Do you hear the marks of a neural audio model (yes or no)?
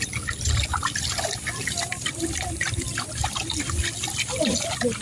no